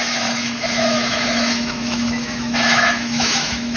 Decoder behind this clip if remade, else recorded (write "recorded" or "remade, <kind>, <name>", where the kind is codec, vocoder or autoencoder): remade, autoencoder, DAC-VAE